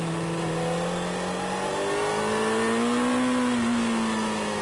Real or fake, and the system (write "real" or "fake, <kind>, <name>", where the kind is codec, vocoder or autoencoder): real